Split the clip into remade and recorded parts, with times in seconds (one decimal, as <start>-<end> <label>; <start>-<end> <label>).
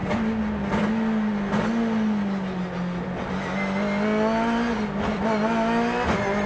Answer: 0.0-6.5 recorded